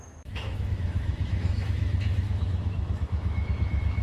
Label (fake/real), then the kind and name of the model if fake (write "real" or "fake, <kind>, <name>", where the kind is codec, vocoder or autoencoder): fake, autoencoder, DAC-VAE